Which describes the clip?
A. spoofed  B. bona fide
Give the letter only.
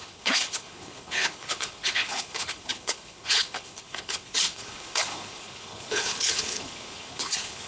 A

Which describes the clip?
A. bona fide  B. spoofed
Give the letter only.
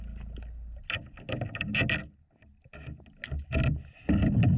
A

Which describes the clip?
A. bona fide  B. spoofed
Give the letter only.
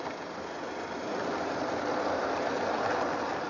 A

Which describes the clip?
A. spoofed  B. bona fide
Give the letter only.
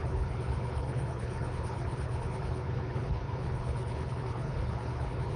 A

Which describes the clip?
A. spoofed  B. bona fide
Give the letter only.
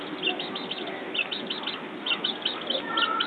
B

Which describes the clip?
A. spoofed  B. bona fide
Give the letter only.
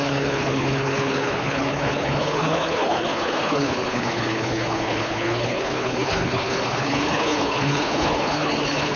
A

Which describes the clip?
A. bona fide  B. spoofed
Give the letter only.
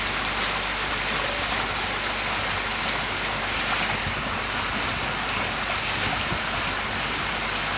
A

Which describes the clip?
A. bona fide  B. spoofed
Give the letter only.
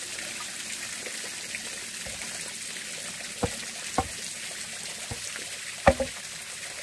A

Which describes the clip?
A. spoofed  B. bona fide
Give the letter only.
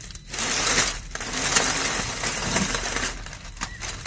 B